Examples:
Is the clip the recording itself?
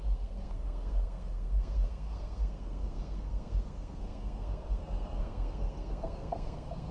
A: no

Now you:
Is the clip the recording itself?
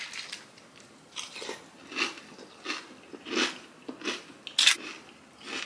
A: yes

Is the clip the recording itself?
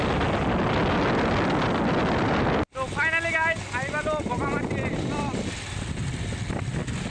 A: yes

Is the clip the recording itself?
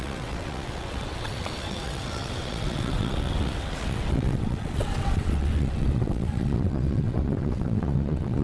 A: no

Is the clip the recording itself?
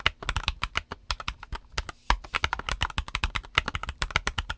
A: yes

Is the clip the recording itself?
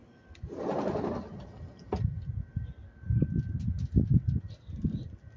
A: yes